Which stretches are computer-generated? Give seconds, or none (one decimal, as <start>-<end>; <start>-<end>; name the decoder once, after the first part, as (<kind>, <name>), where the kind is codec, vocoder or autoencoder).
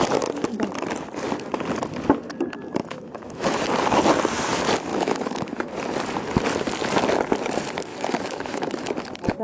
2.8-3.6 (autoencoder, DAC-VAE); 4.9-5.7; 7.9-8.9